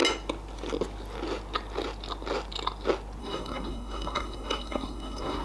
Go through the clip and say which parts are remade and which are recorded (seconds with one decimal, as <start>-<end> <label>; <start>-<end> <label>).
0.0-3.2 recorded; 3.2-5.4 remade